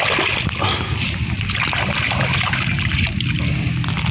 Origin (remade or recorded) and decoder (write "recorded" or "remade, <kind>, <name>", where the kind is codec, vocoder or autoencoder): recorded